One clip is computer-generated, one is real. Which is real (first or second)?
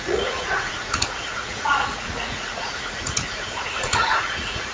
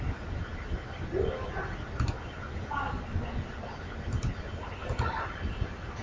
second